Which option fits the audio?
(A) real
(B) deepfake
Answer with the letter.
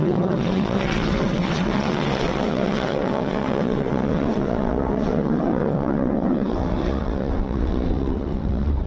B